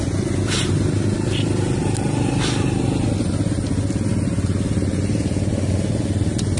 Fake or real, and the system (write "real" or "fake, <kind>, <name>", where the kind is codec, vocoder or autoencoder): real